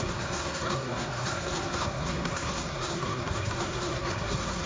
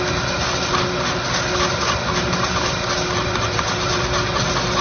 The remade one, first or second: first